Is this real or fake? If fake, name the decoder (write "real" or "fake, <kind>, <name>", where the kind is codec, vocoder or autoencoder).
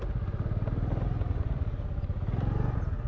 real